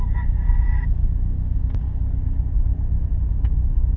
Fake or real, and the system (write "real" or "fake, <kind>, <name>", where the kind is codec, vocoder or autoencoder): real